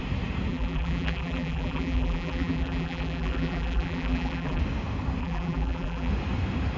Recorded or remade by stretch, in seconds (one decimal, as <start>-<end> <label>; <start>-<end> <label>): 0.0-0.5 recorded; 0.5-4.6 remade; 4.6-5.2 recorded; 5.2-6.1 remade; 6.1-6.8 recorded